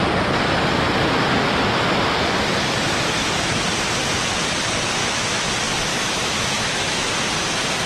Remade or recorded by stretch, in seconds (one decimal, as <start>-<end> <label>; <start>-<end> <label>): 0.0-5.0 recorded; 5.0-5.5 remade; 5.5-5.9 recorded; 5.9-7.1 remade; 7.1-7.9 recorded